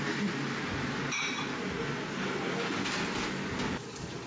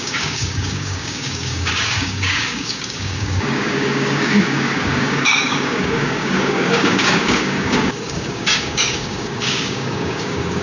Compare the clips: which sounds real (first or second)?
first